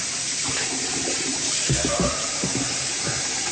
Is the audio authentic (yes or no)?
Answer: no